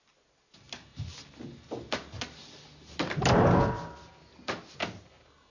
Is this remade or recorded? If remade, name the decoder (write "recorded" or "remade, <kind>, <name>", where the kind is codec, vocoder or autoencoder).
recorded